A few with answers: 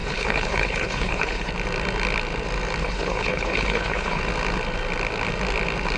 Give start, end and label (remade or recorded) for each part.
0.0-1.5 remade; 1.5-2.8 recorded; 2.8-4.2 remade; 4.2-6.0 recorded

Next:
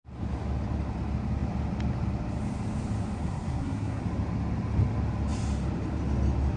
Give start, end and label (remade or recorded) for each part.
0.0-3.2 recorded; 3.2-4.0 remade; 4.0-6.6 recorded

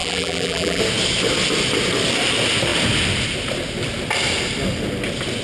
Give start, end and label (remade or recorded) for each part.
0.0-0.8 remade; 0.8-5.4 recorded